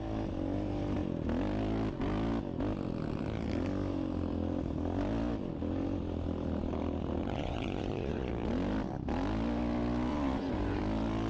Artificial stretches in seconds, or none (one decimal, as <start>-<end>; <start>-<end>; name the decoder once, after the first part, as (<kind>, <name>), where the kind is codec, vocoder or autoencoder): 7.2-8.3 (vocoder, Vocos); 10.1-10.8